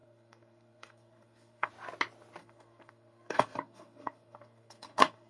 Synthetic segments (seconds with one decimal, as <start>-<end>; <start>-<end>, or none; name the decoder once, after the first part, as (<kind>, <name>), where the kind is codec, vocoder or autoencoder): 0.0-1.7 (codec, SNAC); 2.4-5.3